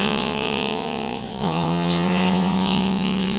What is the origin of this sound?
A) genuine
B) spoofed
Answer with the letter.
B